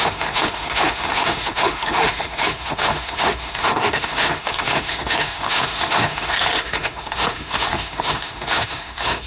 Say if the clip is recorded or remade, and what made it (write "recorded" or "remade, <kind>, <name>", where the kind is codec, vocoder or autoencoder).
remade, autoencoder, DAC-VAE